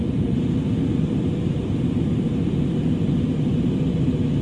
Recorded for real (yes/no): yes